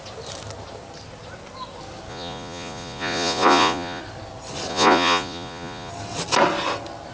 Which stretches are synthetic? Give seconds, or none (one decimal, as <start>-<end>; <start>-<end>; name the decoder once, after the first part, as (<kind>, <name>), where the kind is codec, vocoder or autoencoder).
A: 2.1-4.0 (vocoder, Vocos); 4.7-5.9